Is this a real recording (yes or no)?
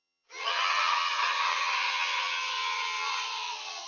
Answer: no